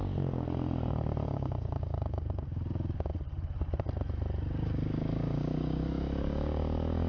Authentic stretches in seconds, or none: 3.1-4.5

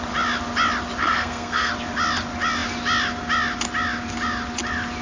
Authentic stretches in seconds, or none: 0.0-1.0; 1.7-5.0

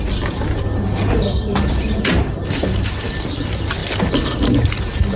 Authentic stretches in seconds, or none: 0.0-1.5; 2.9-5.2

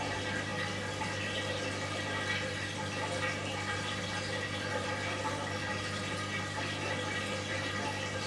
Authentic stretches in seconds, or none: 0.0-8.3

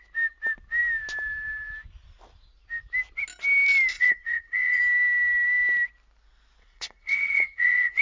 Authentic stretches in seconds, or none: 0.0-3.9; 4.8-6.6

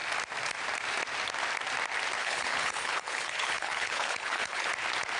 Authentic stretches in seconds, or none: 0.0-2.2; 4.7-5.2

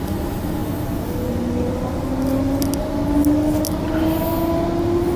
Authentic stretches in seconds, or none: 0.0-5.2